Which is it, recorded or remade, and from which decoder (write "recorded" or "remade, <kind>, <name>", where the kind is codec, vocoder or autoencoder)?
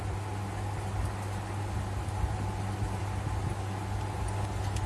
recorded